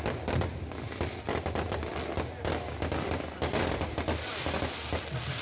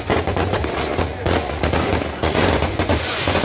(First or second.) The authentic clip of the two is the first